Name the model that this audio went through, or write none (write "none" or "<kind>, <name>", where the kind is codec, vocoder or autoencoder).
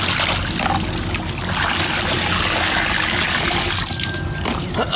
none